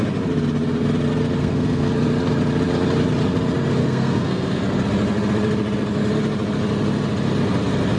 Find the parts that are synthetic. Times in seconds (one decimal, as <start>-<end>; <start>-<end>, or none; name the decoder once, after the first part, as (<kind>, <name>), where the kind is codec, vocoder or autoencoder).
1.4-1.9 (codec, SNAC); 3.8-4.6